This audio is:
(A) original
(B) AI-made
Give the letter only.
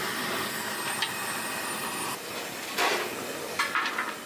A